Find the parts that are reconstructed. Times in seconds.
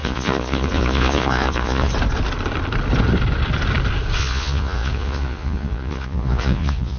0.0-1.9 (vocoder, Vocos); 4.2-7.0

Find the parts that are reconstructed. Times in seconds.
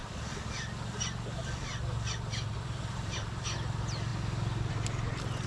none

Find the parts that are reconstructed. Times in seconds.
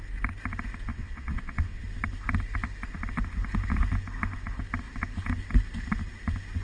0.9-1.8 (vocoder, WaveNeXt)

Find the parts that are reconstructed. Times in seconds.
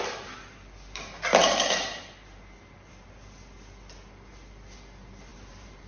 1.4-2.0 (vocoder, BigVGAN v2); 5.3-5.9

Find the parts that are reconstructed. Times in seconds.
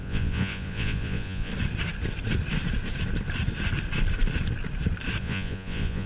0.0-1.5 (vocoder, Vocos); 5.2-6.1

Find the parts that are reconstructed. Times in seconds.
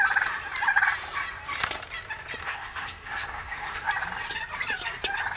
2.4-3.9 (codec, SNAC)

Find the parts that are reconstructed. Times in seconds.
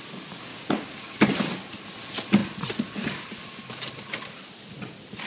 0.5-1.2 (codec, DAC)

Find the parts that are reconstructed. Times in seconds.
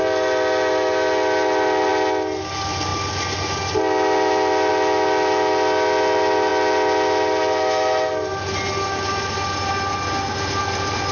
none